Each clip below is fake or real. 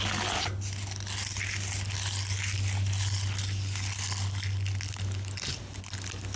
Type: real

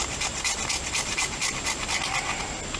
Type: real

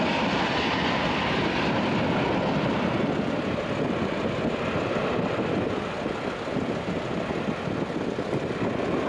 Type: real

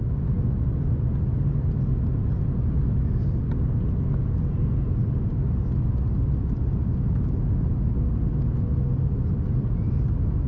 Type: real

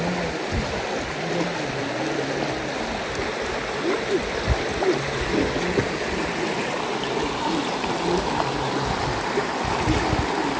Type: real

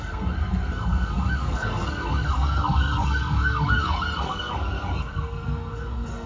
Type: fake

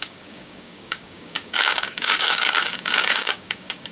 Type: fake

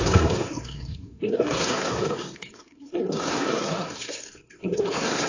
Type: fake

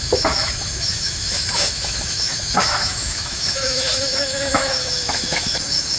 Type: fake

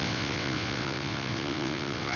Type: fake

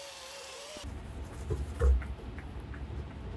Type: fake